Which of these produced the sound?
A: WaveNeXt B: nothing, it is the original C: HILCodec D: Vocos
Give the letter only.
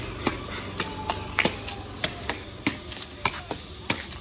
B